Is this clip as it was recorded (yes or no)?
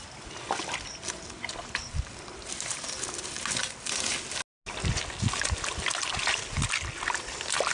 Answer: yes